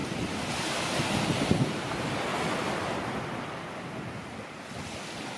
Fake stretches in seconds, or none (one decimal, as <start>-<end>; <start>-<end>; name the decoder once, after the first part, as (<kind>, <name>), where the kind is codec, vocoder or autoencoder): 0.0-2.3 (vocoder, BigVGAN v2)